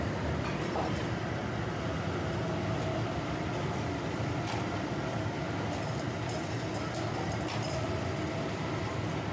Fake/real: real